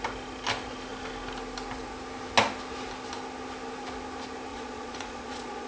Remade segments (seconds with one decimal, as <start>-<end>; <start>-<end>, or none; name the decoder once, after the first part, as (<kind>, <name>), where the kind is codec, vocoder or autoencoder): 4.5-5.7 (vocoder, Vocos)